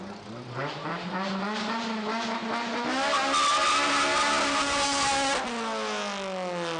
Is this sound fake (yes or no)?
no